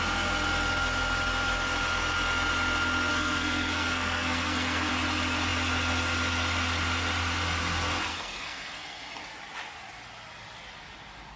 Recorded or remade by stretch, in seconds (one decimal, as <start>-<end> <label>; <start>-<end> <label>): 0.0-3.1 recorded; 3.1-4.9 remade; 4.9-8.1 recorded; 8.1-9.2 remade; 9.2-11.4 recorded